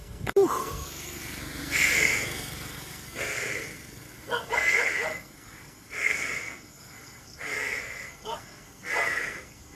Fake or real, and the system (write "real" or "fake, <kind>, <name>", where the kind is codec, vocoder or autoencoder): fake, codec, SNAC